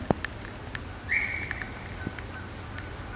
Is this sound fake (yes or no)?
no